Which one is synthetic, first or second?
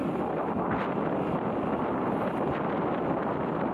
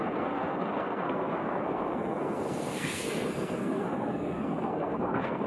second